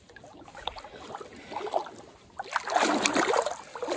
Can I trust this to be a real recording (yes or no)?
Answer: yes